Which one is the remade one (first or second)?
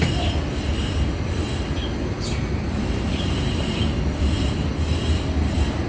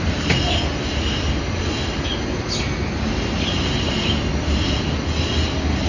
first